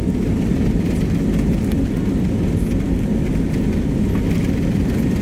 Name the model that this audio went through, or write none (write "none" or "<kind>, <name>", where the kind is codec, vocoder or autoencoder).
none